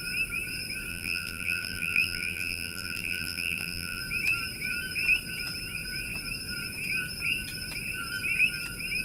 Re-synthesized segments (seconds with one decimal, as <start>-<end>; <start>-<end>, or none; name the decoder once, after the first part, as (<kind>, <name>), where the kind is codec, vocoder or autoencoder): 0.9-4.0 (vocoder, BigVGAN v2)